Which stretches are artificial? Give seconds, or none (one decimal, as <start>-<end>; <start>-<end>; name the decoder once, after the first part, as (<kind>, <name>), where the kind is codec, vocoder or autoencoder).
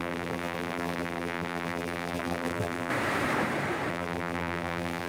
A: 0.0-2.9 (vocoder, BigVGAN v2); 3.9-5.1